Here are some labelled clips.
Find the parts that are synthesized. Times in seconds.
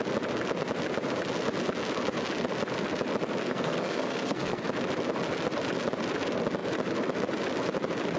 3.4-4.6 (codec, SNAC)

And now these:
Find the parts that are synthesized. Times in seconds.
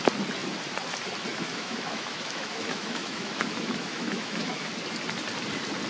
1.3-4.7 (autoencoder, DAC-VAE)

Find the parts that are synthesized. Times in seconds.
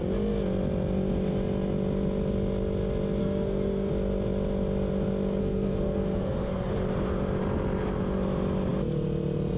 3.2-3.9 (codec, SNAC); 5.4-6.7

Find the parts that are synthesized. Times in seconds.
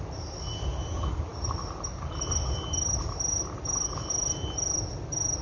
none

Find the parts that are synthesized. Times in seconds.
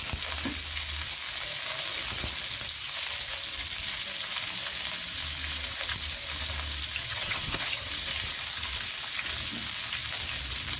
7.0-7.9 (vocoder, HiFi-GAN)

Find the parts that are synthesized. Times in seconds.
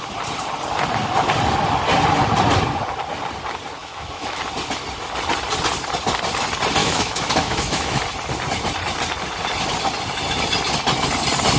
3.8-4.4 (autoencoder, DAC-VAE); 6.8-8.0